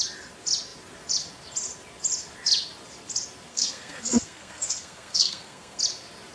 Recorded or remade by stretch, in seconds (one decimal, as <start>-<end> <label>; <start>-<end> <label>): 0.0-3.5 recorded; 3.5-5.8 remade; 5.8-6.3 recorded